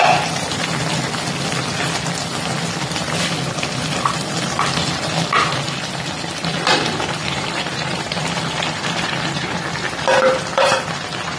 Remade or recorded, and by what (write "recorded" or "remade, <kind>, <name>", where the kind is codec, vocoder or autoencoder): remade, vocoder, BigVGAN v2